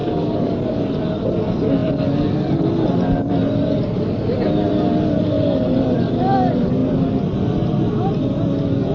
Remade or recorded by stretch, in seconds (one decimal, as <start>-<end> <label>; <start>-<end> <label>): 0.0-0.6 remade; 0.6-8.9 recorded